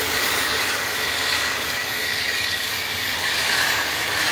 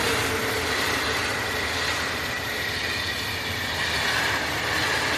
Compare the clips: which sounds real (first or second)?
second